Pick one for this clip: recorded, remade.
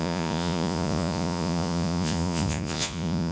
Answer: remade